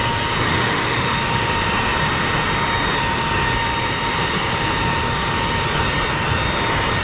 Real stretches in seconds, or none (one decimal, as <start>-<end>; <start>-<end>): 0.0-0.5; 1.5-7.0

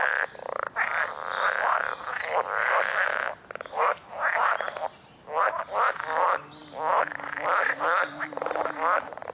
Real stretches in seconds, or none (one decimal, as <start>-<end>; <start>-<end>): 0.0-9.3